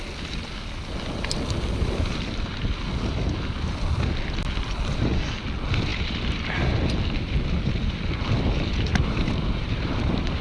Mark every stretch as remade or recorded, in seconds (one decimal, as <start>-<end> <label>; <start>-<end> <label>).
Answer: 0.0-8.9 recorded; 8.9-10.4 remade